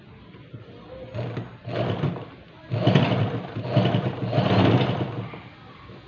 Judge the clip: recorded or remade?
recorded